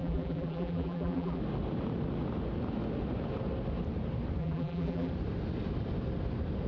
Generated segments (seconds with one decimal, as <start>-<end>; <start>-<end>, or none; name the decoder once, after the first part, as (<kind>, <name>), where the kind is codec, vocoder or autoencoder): 0.0-1.4 (vocoder, BigVGAN v2); 4.4-5.1